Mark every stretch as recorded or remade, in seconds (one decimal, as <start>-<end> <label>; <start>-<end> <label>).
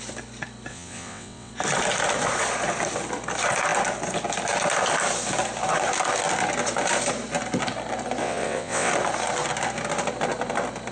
0.0-0.7 recorded; 0.7-1.5 remade; 1.5-8.2 recorded; 8.2-8.9 remade; 8.9-10.9 recorded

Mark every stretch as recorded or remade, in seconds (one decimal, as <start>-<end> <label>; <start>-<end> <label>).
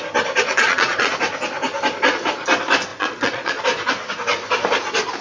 0.0-0.5 recorded; 0.5-1.1 remade; 1.1-2.9 recorded; 2.9-3.6 remade; 3.6-5.2 recorded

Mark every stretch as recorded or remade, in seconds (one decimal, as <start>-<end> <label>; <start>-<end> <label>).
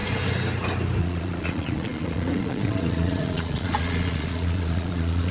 0.0-1.0 recorded; 1.0-5.3 remade